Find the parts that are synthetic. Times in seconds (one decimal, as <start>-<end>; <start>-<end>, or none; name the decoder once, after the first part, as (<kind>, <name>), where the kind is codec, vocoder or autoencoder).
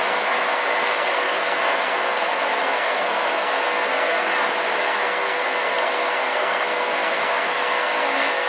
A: 0.0-4.3 (codec, SNAC); 4.8-8.5